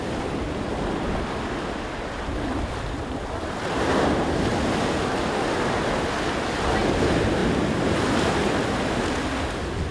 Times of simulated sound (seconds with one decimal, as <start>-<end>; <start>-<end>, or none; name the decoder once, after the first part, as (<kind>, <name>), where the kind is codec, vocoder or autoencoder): none